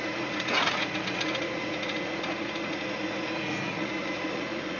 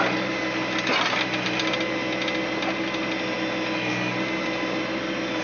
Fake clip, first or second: first